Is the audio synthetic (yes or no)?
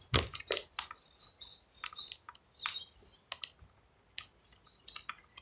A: no